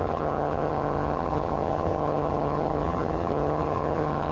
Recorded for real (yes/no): no